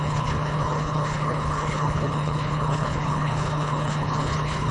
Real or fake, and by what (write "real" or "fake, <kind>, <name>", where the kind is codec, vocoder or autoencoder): fake, codec, HILCodec